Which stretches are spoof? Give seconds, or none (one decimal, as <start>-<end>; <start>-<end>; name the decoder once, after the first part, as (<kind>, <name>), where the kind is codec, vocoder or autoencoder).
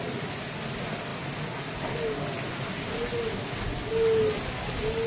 none